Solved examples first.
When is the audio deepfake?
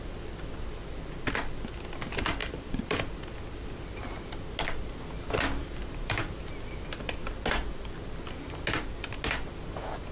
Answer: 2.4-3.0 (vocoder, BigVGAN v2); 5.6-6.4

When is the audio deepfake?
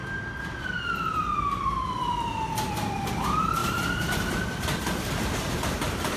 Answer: 3.1-6.2 (vocoder, BigVGAN v2)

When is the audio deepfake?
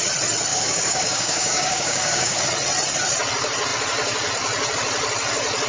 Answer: 0.5-2.4 (codec, DAC)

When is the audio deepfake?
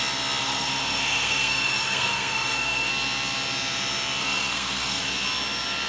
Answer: 0.4-2.9 (codec, SNAC); 4.2-5.1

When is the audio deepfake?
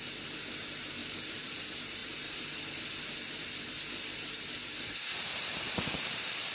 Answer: 1.0-1.6 (vocoder, BigVGAN v2); 2.0-2.6; 5.5-6.5